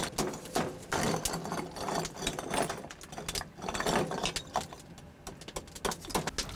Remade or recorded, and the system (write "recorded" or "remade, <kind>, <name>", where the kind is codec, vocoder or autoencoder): recorded